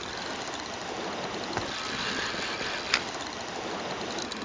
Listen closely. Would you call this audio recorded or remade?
recorded